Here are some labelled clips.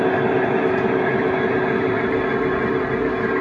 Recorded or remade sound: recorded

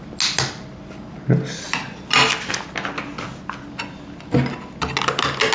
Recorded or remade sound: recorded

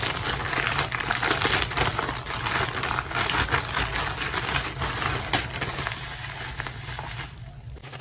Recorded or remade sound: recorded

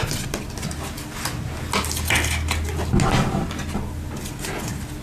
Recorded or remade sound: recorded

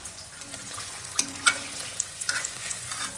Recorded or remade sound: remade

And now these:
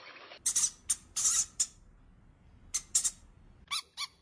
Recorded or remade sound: recorded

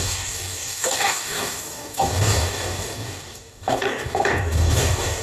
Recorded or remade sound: remade